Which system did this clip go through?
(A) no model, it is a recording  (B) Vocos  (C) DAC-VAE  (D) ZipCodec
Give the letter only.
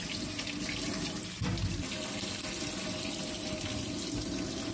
A